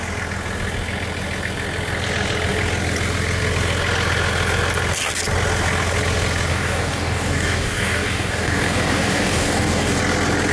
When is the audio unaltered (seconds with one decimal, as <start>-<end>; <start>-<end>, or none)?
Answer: 0.0-6.5; 10.0-10.5